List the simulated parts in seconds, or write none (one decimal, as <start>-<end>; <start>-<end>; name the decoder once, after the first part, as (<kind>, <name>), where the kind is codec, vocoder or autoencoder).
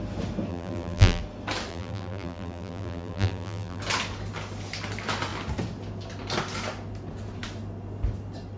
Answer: 0.5-1.2 (vocoder, BigVGAN v2); 1.7-3.8